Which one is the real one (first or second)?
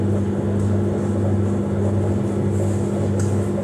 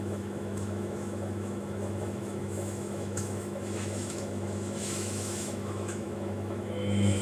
first